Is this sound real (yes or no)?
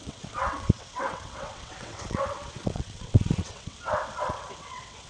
no